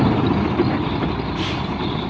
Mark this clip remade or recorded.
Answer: recorded